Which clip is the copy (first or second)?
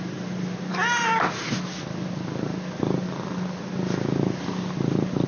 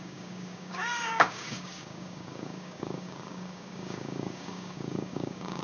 second